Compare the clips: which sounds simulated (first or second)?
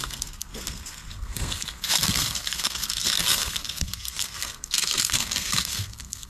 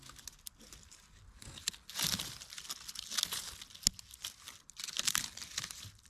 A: first